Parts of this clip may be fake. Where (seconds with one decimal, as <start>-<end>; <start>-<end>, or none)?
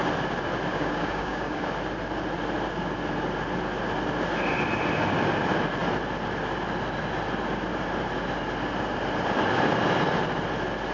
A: 0.7-1.7